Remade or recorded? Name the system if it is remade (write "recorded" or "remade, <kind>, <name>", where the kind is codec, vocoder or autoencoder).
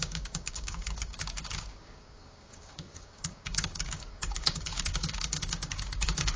remade, codec, DAC